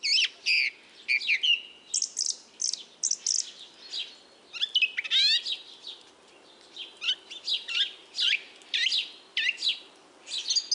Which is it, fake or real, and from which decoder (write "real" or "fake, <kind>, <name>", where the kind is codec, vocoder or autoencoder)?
real